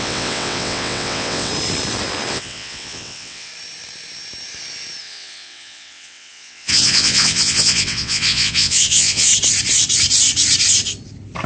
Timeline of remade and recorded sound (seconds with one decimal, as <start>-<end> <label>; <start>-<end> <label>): 0.0-1.5 remade; 1.5-2.3 recorded; 2.3-3.5 remade; 3.5-5.0 recorded; 5.0-9.3 remade; 9.3-11.5 recorded